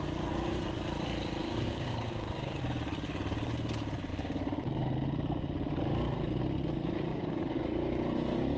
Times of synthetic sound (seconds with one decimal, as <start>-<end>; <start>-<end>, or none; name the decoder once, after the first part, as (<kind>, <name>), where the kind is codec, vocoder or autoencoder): 1.4-2.6 (codec, DAC); 7.1-7.6